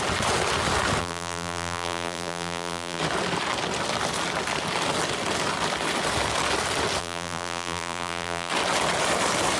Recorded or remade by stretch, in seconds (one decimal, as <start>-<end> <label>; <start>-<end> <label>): 0.0-1.0 recorded; 1.0-3.0 remade; 3.0-7.0 recorded; 7.0-8.5 remade; 8.5-9.6 recorded